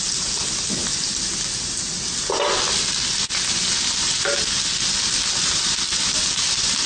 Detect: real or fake real